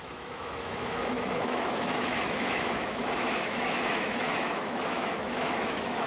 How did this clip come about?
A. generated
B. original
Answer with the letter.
A